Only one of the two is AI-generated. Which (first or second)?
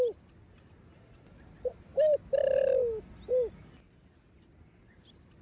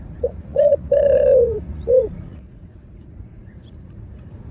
second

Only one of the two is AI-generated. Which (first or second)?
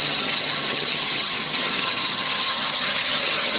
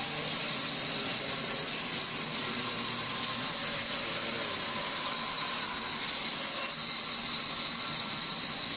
first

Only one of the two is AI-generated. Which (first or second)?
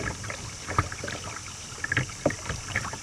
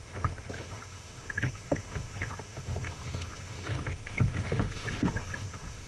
second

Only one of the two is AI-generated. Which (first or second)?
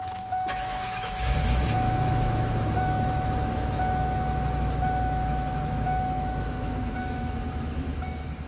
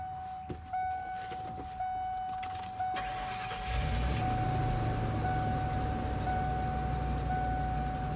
first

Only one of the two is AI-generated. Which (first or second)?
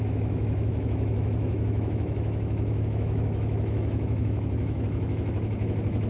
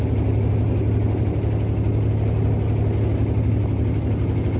first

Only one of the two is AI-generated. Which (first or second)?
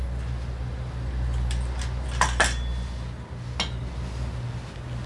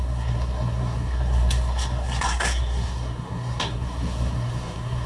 second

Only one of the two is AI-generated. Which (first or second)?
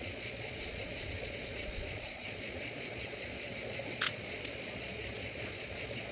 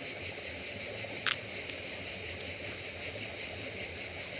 first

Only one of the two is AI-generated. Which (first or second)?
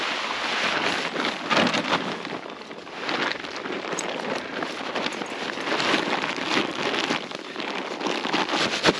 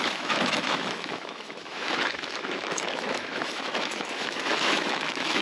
second